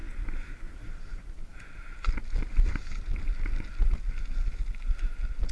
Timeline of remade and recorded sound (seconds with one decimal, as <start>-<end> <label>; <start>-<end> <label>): 0.0-5.5 recorded